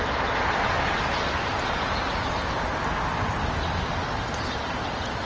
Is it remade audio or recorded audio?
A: recorded